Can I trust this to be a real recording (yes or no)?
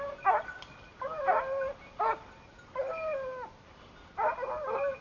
yes